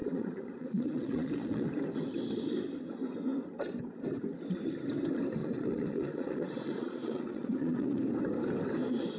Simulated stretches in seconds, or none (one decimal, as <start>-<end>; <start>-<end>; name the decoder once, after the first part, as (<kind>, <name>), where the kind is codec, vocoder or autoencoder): 0.0-1.7 (vocoder, Vocos); 5.4-8.0